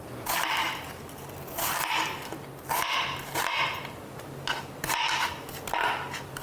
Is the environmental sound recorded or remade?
recorded